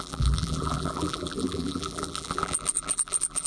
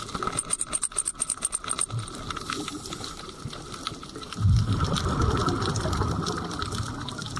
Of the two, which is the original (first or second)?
second